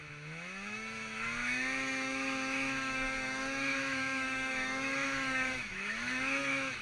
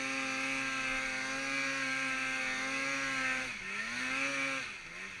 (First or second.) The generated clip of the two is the first